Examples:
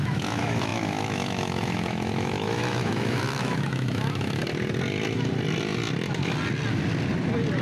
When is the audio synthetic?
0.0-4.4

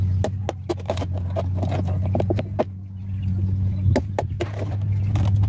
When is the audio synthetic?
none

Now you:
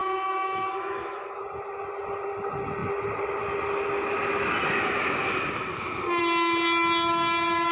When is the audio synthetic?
0.0-1.4